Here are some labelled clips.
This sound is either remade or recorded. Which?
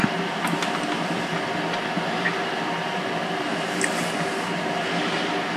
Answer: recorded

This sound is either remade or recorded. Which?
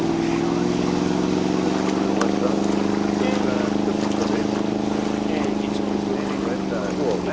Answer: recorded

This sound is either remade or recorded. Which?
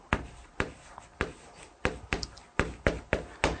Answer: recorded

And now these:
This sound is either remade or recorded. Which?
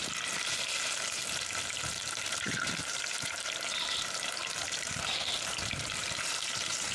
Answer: remade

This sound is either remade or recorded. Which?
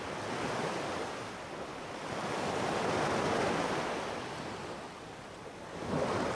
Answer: recorded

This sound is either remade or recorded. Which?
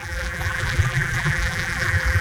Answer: remade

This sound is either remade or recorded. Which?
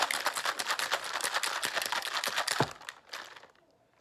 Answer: recorded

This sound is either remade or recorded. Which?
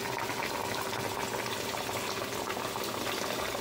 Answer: recorded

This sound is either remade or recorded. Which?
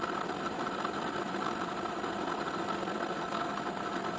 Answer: recorded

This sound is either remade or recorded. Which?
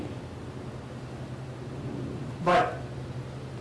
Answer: recorded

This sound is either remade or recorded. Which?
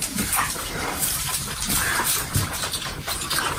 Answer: remade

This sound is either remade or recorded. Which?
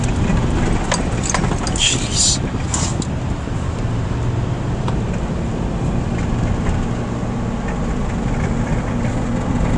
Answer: recorded